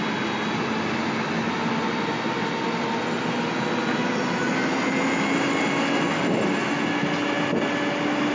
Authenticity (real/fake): real